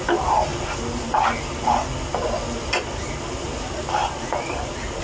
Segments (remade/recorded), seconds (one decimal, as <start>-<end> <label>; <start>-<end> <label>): 0.0-5.0 recorded